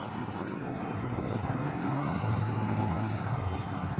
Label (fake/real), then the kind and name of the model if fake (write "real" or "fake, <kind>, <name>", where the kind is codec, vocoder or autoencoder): fake, codec, SNAC